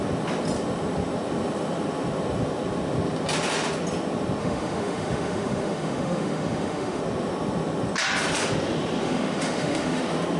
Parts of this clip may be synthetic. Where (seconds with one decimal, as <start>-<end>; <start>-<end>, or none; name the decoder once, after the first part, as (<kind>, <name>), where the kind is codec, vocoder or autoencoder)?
4.4-7.0 (autoencoder, DAC-VAE); 9.0-10.0